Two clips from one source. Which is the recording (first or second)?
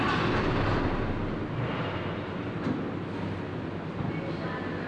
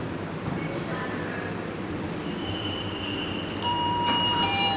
first